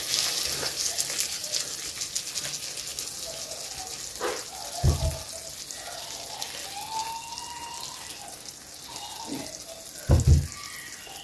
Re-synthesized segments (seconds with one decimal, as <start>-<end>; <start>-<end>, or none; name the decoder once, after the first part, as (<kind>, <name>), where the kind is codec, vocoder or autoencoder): none